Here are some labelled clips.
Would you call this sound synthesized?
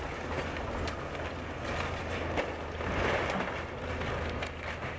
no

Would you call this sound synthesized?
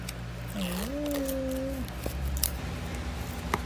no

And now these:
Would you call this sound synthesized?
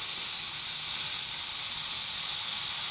no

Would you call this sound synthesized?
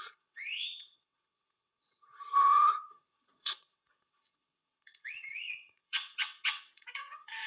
yes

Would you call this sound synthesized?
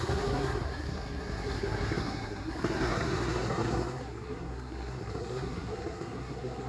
yes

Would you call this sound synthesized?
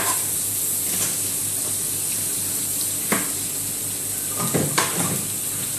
no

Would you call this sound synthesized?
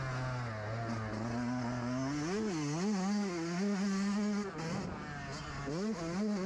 no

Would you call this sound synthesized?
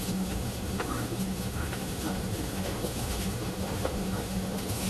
yes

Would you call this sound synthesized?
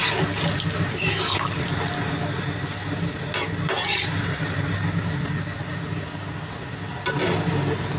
no